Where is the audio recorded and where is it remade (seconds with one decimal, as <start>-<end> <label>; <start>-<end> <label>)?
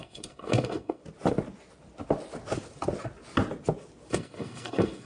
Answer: 0.0-1.0 remade; 1.0-4.1 recorded; 4.1-5.1 remade